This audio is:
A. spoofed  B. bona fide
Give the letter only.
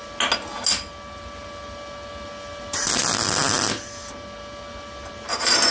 B